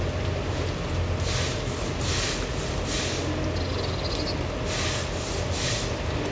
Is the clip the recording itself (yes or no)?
yes